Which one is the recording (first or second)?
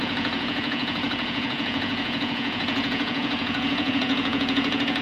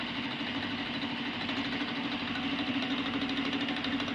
second